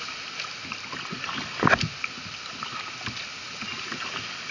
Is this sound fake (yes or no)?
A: no